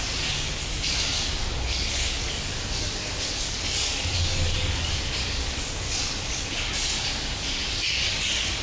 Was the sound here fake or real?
fake